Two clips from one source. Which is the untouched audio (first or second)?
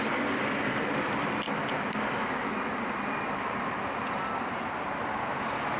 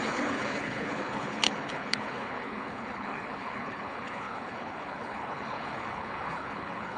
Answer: first